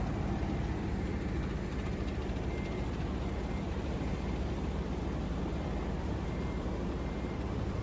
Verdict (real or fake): fake